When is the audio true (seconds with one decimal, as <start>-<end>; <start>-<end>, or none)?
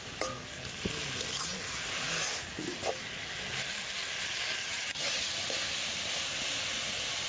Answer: 0.0-4.6; 5.3-7.3